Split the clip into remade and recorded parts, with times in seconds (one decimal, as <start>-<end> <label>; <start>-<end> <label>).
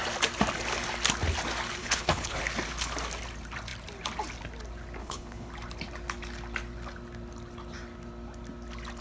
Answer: 0.0-1.8 recorded; 1.8-2.4 remade; 2.4-5.0 recorded; 5.0-5.5 remade; 5.5-9.0 recorded